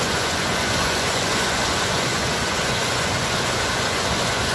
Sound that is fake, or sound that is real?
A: fake